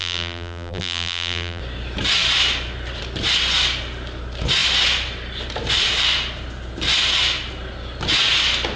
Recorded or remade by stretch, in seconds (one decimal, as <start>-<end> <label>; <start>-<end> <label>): 0.0-1.6 remade; 1.6-8.8 recorded